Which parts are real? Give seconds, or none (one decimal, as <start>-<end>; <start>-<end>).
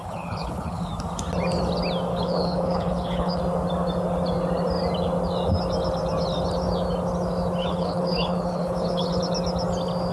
0.9-2.1; 3.4-7.6; 9.2-10.1